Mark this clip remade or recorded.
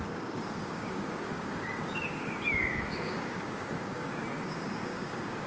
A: remade